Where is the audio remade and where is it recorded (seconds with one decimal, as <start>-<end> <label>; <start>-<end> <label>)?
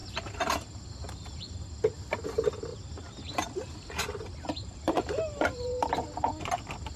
0.0-2.7 recorded; 2.7-5.9 remade; 5.9-7.0 recorded